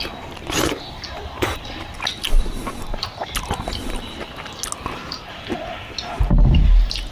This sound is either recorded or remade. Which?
recorded